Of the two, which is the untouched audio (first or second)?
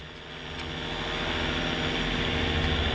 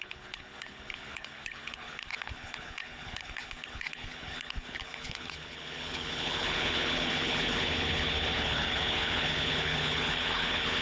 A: first